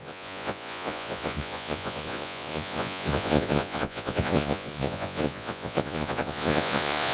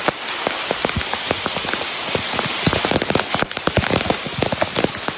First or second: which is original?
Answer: second